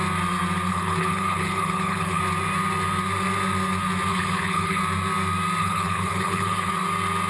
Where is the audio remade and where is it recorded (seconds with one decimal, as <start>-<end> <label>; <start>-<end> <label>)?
0.0-0.7 recorded; 0.7-2.2 remade; 2.2-4.1 recorded; 4.1-4.8 remade; 4.8-5.6 recorded; 5.6-6.7 remade; 6.7-7.3 recorded